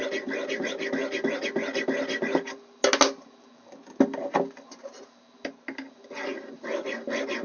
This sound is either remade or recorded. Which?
recorded